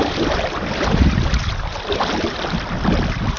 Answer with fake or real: fake